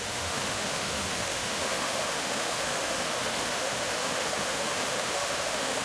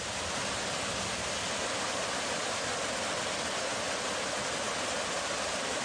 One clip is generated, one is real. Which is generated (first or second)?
first